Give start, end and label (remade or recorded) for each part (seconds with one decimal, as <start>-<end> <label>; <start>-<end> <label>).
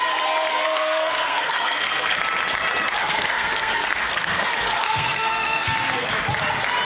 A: 0.0-0.5 recorded; 0.5-2.2 remade; 2.2-3.0 recorded; 3.0-6.1 remade; 6.1-6.8 recorded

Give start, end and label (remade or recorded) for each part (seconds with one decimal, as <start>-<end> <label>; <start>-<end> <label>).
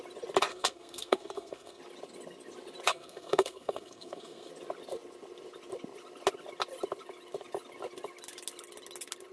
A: 0.0-0.5 recorded; 0.5-1.8 remade; 1.8-2.9 recorded; 2.9-4.5 remade; 4.5-9.3 recorded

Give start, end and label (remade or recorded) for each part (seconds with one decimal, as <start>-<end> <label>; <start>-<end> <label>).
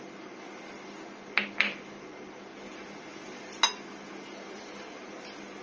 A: 0.0-5.6 recorded